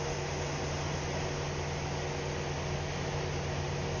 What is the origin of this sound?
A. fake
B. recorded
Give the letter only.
B